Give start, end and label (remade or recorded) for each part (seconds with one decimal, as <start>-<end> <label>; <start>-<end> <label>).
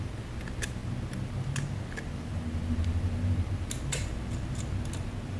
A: 0.0-5.4 recorded